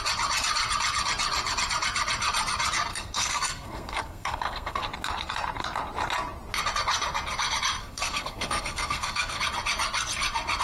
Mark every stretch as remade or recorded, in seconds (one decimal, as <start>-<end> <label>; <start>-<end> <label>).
0.0-2.9 recorded; 2.9-4.8 remade; 4.8-7.8 recorded; 7.8-9.4 remade; 9.4-10.6 recorded